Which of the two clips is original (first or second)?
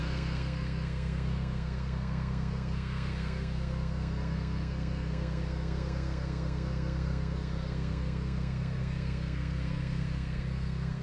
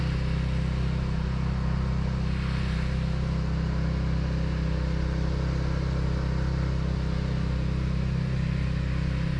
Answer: second